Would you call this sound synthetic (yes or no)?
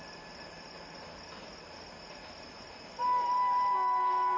no